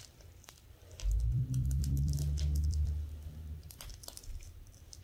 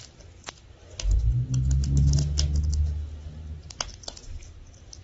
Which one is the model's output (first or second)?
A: first